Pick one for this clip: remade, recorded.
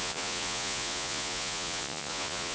remade